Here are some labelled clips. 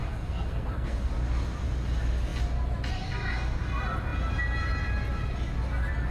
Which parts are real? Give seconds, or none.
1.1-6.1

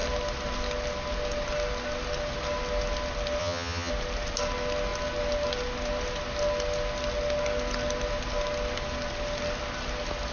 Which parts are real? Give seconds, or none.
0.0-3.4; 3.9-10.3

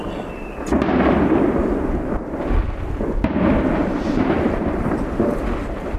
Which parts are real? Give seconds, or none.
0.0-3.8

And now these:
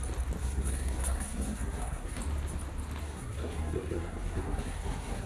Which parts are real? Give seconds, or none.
0.0-0.4; 2.2-3.0

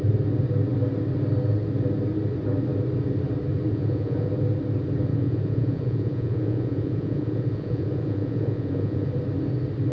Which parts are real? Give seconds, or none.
0.0-3.7; 4.3-5.1; 9.1-9.9

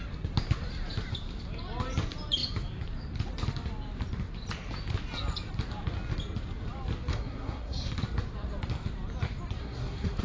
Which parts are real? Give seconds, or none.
0.0-7.1; 7.9-9.6

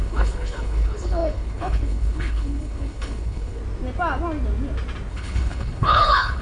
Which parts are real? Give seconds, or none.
3.6-5.1

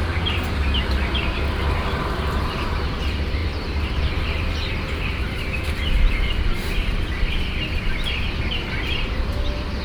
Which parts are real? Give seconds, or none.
0.0-0.8